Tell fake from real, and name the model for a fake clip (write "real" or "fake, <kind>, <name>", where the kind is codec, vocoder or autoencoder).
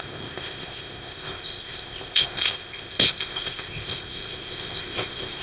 fake, codec, ZipCodec